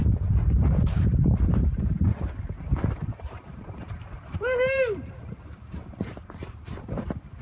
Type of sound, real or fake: fake